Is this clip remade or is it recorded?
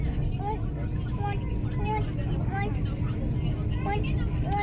recorded